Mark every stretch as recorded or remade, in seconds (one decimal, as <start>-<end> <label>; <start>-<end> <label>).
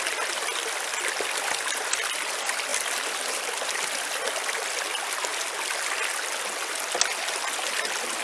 0.0-8.2 recorded